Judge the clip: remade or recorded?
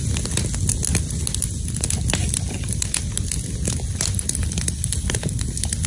recorded